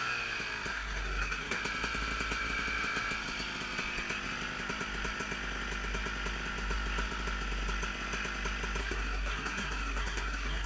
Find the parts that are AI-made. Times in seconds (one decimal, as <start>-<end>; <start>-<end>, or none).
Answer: 0.7-1.6; 8.8-10.7